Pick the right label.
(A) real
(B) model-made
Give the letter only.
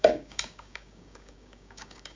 B